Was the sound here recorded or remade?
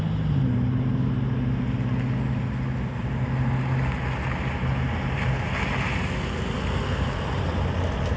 recorded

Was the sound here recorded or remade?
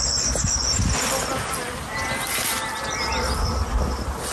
recorded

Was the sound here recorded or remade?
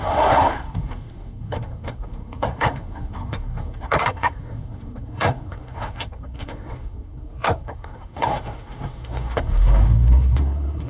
remade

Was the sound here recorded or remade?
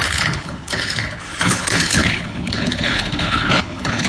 remade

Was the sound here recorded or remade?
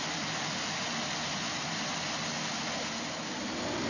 recorded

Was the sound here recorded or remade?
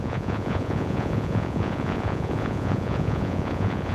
remade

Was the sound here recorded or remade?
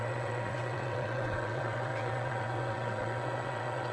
remade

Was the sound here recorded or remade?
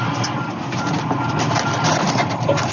recorded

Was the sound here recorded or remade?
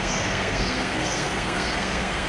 remade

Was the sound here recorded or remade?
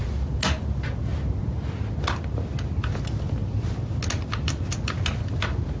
recorded